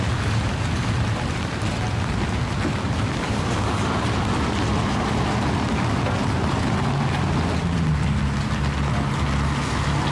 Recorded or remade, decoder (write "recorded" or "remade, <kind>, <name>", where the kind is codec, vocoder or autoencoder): recorded